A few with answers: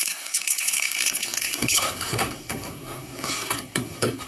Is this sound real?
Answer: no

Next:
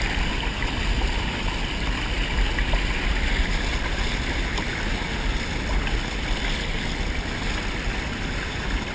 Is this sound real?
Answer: yes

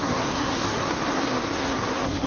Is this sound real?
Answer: no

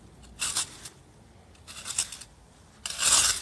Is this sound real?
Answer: yes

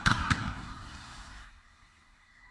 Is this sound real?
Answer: no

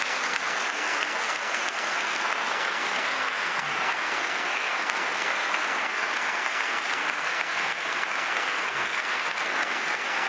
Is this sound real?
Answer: no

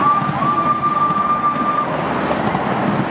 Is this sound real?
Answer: yes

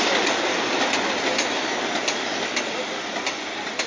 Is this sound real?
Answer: yes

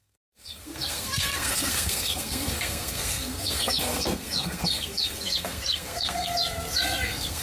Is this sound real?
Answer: no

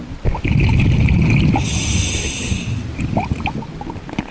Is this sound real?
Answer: yes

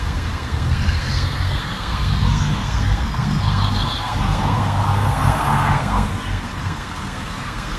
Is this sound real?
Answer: no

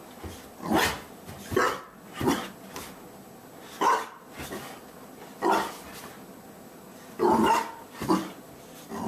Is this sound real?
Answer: yes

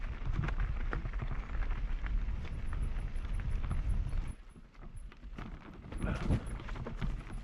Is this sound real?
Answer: yes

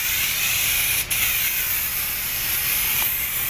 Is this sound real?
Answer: yes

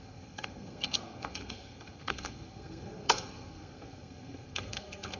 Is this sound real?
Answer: no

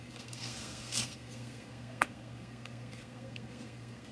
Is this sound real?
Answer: no